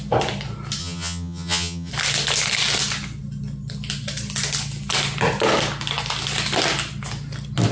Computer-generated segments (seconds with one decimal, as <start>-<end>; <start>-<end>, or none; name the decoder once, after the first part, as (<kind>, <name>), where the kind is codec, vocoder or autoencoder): 0.8-1.9 (vocoder, HiFi-GAN)